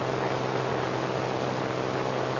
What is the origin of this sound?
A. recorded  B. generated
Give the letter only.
A